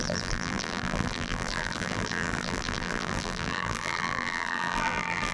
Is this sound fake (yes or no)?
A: yes